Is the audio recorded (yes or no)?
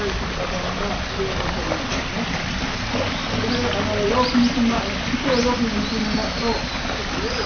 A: yes